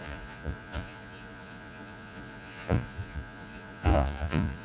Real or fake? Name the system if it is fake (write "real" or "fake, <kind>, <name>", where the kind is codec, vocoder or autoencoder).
fake, vocoder, Vocos